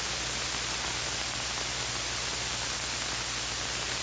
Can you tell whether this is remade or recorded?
recorded